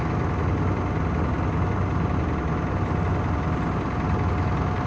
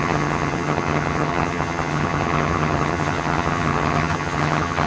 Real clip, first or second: first